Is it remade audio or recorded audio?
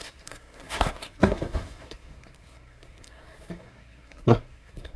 remade